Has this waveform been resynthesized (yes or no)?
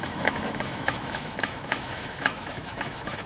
yes